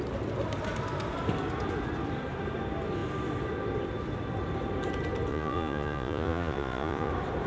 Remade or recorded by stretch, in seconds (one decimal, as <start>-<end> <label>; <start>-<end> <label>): 0.0-5.3 recorded; 5.3-7.1 remade; 7.1-7.5 recorded